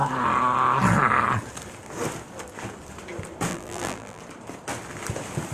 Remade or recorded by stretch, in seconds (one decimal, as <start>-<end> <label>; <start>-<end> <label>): 0.0-3.5 recorded; 3.5-4.2 remade; 4.2-5.5 recorded